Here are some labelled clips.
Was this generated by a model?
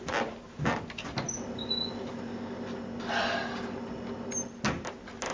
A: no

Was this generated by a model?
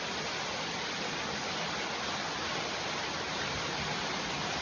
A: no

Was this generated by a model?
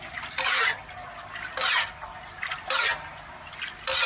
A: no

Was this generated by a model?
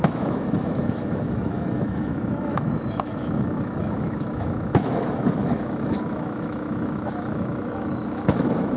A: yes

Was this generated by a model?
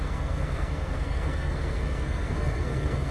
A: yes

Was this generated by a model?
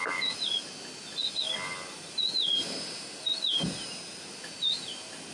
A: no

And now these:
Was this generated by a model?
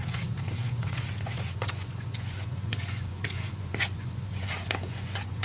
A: yes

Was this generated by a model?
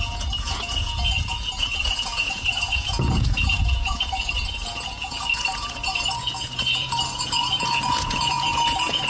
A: yes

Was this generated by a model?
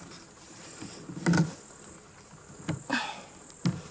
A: no